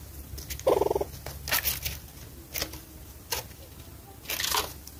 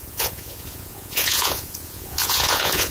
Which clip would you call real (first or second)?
first